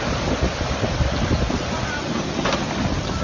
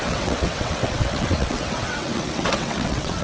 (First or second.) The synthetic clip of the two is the second